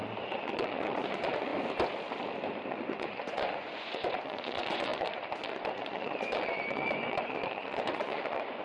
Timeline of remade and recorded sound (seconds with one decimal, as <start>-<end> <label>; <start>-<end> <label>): 0.0-1.5 remade; 1.5-2.7 recorded; 2.7-8.6 remade